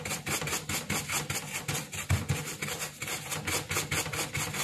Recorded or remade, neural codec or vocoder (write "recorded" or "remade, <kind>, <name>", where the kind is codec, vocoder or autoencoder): recorded